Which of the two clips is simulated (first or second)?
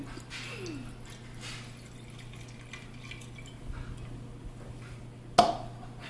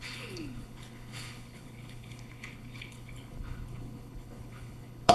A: second